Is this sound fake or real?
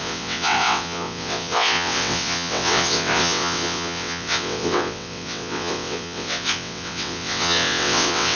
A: fake